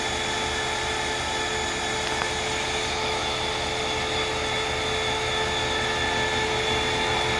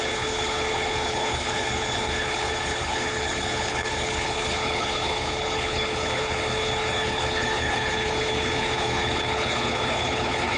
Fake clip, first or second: second